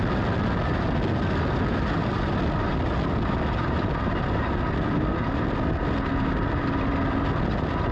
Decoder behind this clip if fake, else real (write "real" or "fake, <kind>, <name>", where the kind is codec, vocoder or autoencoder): real